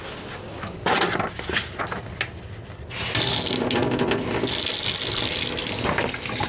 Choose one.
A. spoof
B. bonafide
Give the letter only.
B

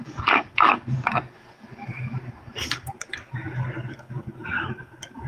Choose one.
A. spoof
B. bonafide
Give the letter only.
A